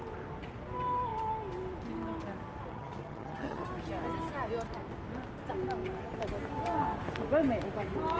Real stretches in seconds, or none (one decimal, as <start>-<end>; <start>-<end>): 0.0-2.7; 3.7-8.2